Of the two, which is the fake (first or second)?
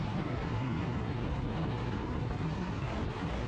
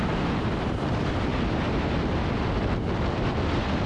first